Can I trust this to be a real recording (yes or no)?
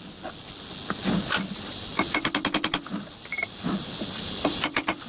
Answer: yes